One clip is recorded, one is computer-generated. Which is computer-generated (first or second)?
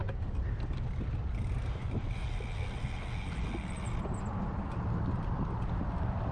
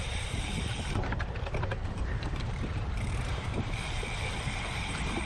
second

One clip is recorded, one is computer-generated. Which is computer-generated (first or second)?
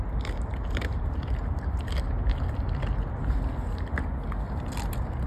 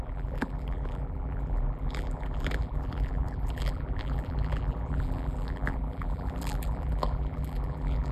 second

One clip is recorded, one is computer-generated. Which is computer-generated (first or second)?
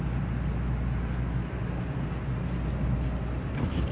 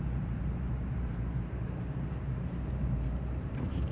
second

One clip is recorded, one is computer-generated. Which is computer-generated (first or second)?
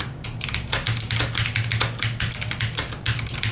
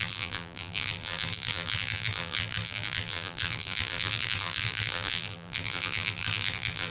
second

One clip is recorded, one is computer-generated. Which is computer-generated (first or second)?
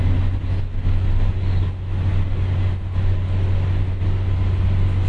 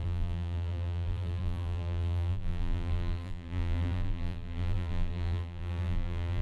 second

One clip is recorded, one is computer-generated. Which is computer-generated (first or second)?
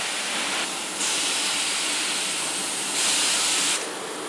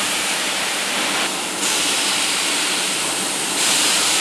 second